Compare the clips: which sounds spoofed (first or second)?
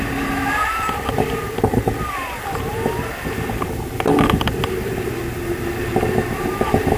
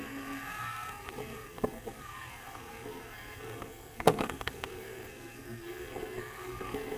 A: second